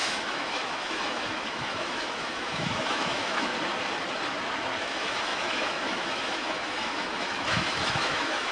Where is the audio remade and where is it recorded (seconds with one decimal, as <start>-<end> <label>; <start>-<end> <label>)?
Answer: 0.0-3.5 remade; 3.5-4.8 recorded; 4.8-8.5 remade